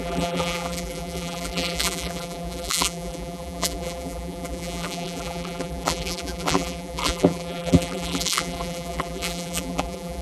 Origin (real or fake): fake